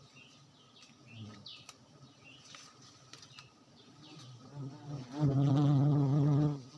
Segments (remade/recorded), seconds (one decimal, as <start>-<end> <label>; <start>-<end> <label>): 0.0-1.5 recorded; 1.5-5.5 remade; 5.5-6.8 recorded